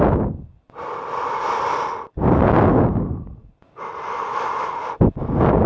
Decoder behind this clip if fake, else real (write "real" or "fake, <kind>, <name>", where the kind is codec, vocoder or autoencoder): real